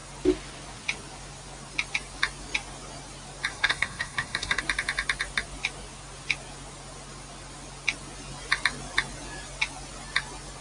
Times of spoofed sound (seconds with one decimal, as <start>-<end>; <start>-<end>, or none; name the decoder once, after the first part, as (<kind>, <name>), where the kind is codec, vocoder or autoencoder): 3.5-4.6 (codec, SNAC)